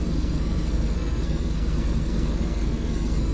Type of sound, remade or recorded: remade